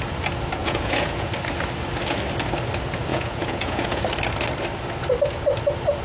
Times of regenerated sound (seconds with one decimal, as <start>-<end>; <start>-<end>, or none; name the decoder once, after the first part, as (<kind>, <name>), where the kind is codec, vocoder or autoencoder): 0.6-1.3 (vocoder, Vocos); 3.1-4.0